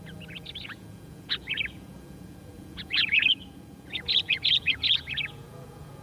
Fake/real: fake